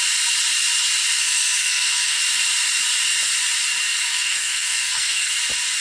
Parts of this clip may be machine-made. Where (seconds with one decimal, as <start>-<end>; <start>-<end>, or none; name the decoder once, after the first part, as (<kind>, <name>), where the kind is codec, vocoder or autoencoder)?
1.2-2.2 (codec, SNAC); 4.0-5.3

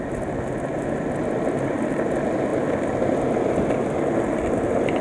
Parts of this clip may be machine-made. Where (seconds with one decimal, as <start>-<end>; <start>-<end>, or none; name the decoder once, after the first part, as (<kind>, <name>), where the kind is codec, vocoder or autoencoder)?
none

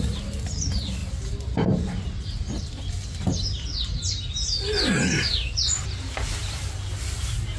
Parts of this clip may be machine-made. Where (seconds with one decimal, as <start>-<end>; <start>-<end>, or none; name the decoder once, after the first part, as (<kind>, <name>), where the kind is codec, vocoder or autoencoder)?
none